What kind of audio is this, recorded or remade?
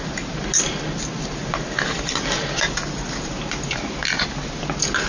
recorded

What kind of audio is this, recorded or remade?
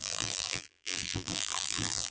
remade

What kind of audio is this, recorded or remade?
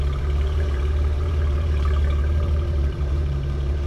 remade